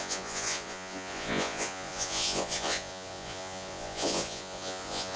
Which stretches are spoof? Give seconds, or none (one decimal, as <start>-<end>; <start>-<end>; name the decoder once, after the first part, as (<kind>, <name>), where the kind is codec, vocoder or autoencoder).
0.0-5.2 (vocoder, Vocos)